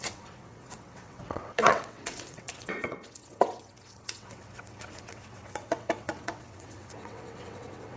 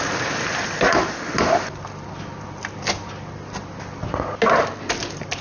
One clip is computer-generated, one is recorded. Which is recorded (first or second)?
second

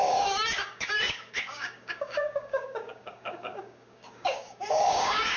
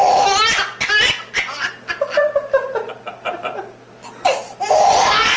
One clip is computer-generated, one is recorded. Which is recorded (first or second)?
second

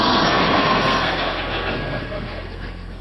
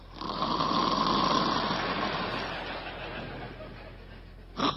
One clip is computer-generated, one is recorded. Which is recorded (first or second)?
second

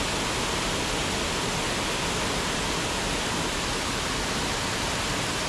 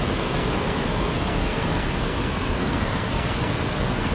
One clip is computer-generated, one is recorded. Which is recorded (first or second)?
first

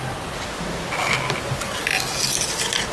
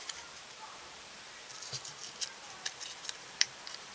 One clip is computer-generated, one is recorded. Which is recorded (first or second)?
first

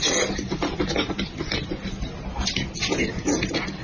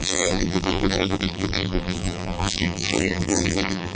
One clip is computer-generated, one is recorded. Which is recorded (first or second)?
first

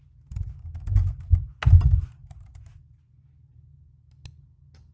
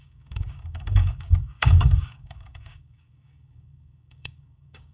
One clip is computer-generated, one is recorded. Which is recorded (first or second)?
first